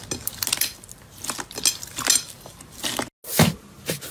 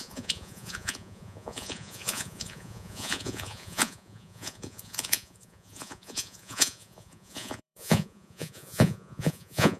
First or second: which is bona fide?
first